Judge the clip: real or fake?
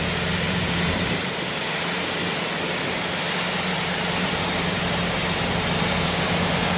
fake